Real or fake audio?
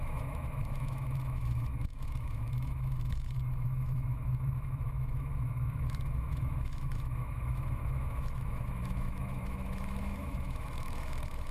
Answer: fake